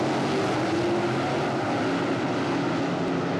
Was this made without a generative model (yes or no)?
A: yes